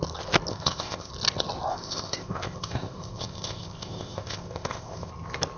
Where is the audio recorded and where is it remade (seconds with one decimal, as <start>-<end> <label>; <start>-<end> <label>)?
0.0-0.5 recorded; 0.5-1.1 remade; 1.1-1.7 recorded; 1.7-5.1 remade; 5.1-5.6 recorded